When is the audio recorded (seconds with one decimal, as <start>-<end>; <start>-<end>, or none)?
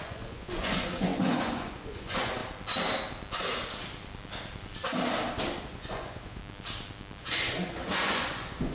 2.4-5.6; 6.4-7.2